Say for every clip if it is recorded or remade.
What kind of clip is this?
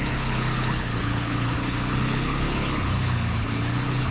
remade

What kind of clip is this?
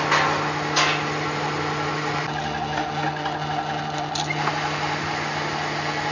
recorded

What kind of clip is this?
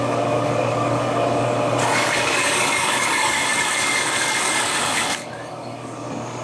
remade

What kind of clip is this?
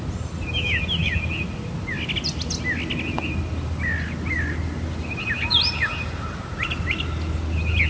recorded